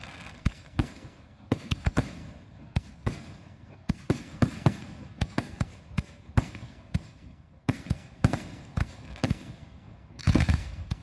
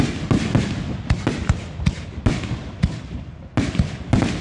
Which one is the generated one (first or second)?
first